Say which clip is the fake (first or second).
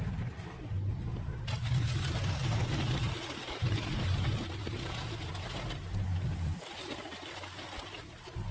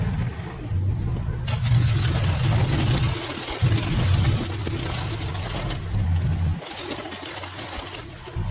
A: first